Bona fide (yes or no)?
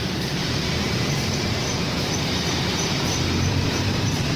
no